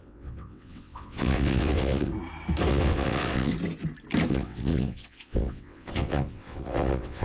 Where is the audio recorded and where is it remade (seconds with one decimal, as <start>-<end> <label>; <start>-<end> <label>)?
0.0-2.1 remade; 2.1-2.7 recorded; 2.7-3.5 remade; 3.5-4.3 recorded; 4.3-7.2 remade

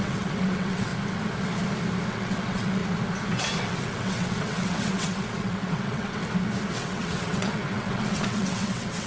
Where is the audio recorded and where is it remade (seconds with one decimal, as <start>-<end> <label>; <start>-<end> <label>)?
0.0-0.9 remade; 0.9-2.1 recorded; 2.1-2.8 remade; 2.8-3.6 recorded; 3.6-6.2 remade; 6.2-6.7 recorded; 6.7-9.1 remade

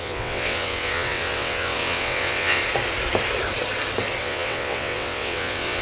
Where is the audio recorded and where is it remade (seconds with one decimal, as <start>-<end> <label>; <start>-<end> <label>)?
0.0-2.6 remade; 2.6-4.2 recorded; 4.2-5.8 remade

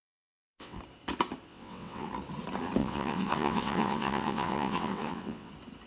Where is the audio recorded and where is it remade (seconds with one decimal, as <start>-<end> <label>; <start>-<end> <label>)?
0.0-0.8 remade; 0.8-1.5 recorded; 1.5-2.1 remade; 2.1-2.8 recorded; 2.8-5.5 remade; 5.5-5.9 recorded

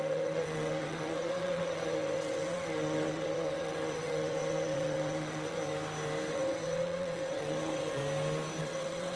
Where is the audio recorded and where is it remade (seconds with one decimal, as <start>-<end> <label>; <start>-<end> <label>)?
0.0-5.7 remade; 5.7-6.3 recorded; 6.3-8.0 remade; 8.0-8.6 recorded; 8.6-9.2 remade